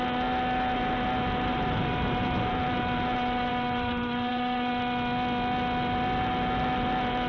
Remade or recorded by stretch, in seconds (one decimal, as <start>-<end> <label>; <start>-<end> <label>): 0.0-1.5 recorded; 1.5-4.7 remade; 4.7-7.3 recorded